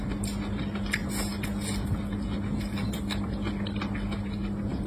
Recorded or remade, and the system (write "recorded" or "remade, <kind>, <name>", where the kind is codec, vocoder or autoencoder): recorded